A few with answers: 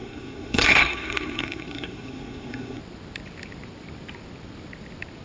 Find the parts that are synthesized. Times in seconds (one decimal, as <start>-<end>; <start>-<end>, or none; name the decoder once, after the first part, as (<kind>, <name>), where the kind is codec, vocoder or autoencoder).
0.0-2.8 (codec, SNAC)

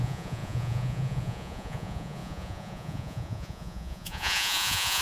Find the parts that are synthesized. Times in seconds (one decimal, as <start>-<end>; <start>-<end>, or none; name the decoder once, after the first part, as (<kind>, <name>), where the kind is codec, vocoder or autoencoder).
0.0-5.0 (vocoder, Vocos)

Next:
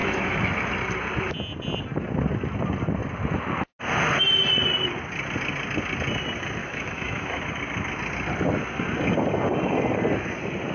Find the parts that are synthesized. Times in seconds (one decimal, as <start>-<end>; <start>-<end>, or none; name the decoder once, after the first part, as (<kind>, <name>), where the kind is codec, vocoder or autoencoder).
0.0-0.7 (autoencoder, DAC-VAE); 6.6-7.4